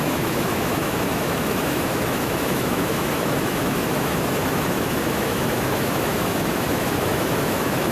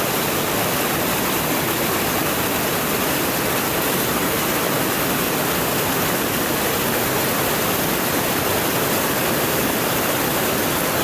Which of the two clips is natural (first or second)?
second